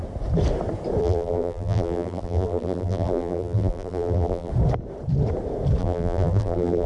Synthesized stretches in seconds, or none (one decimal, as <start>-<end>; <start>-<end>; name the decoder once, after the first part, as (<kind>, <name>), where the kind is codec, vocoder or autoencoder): 1.0-4.5 (vocoder, BigVGAN v2); 5.8-6.9